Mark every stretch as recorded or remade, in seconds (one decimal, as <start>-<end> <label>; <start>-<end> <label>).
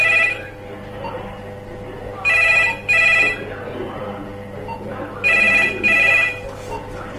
0.0-1.1 remade; 1.1-7.2 recorded